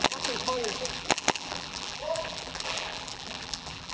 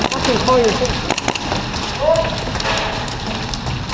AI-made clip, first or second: first